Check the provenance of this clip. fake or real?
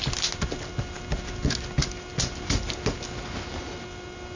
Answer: real